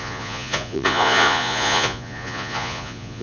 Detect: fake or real fake